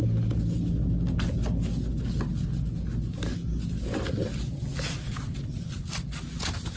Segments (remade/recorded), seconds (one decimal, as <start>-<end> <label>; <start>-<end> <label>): 0.0-6.8 recorded